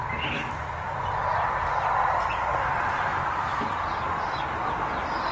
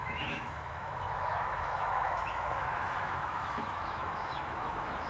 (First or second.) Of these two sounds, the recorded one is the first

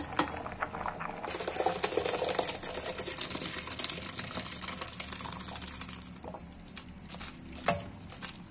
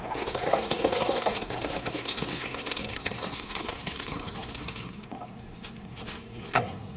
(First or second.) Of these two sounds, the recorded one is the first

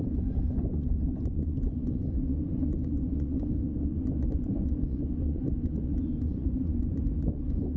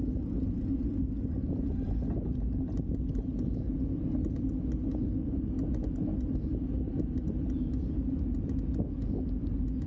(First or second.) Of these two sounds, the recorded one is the second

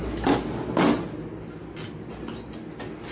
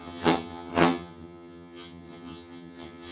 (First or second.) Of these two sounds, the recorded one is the first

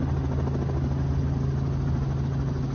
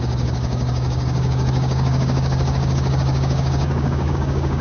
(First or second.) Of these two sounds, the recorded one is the first